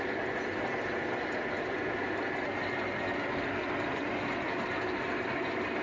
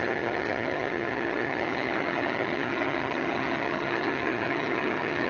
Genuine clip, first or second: first